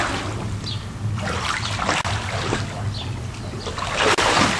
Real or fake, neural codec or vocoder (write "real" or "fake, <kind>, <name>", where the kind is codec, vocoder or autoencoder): real